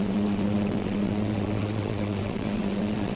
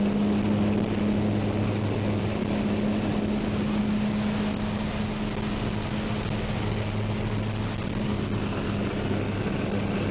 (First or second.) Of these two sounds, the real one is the second